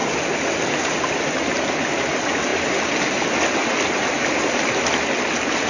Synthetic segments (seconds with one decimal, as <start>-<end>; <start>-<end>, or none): none